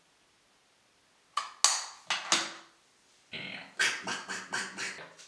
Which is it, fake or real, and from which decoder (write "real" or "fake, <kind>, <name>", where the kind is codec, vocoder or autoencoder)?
real